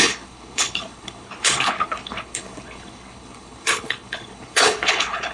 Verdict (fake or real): fake